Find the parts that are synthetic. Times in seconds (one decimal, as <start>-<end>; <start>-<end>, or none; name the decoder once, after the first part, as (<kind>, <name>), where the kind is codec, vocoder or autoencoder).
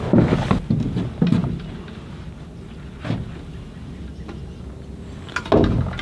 none